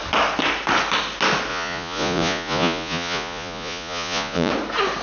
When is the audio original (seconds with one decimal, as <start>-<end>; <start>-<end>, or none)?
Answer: 0.0-1.5; 4.5-5.0